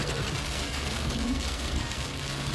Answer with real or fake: fake